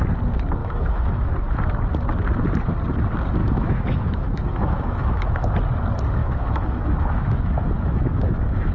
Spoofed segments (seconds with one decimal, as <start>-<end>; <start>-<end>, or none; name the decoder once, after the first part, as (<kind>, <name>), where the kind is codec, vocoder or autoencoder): 0.6-1.3 (autoencoder, DAC-VAE); 3.4-5.5; 6.2-8.7